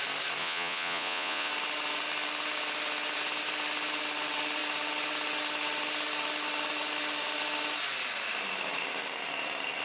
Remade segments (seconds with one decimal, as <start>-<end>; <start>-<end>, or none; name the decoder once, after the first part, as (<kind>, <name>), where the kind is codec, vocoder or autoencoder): 0.4-1.5 (vocoder, Vocos)